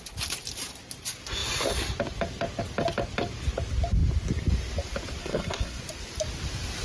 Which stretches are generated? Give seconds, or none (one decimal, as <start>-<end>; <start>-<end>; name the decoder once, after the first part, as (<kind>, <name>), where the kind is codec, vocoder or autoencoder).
5.2-5.8 (codec, SNAC)